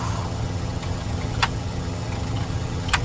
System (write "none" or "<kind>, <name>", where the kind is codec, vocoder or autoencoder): vocoder, HiFi-GAN